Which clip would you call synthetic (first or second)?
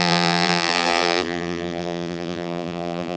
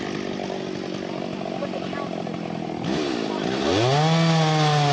first